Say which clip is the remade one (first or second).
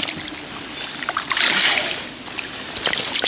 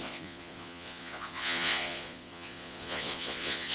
second